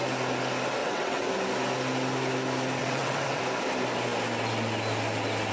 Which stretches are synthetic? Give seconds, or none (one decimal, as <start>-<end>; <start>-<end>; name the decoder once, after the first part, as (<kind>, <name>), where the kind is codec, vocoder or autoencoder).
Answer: 0.8-1.3 (vocoder, WaveNeXt); 2.8-3.4